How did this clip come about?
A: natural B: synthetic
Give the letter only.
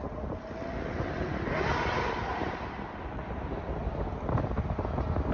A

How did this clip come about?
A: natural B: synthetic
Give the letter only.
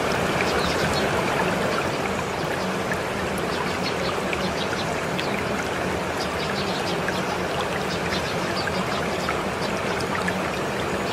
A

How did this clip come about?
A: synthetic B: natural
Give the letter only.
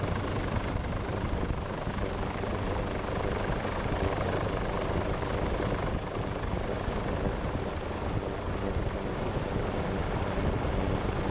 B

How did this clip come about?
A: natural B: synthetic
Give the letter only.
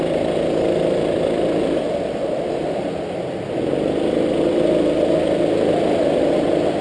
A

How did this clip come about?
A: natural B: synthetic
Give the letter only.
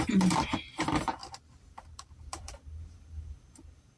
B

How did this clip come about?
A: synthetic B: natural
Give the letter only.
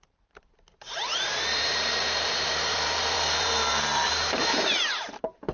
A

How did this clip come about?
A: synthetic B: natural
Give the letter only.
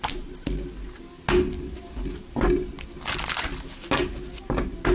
B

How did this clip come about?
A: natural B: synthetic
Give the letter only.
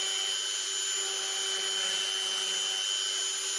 A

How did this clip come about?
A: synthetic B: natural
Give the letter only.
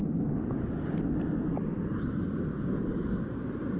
B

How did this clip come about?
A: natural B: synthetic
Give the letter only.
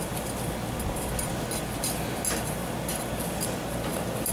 A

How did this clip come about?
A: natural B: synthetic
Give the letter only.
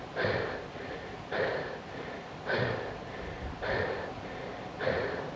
A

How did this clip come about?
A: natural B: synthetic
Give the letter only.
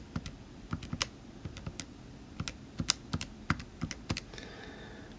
A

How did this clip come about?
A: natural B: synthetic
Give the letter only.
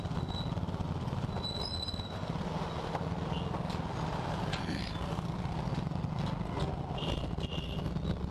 A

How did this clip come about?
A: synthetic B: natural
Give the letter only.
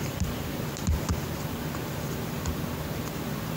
A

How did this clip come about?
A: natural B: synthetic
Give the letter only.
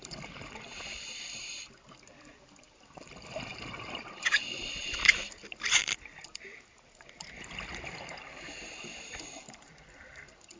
B